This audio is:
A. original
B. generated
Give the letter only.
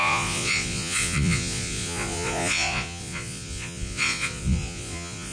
B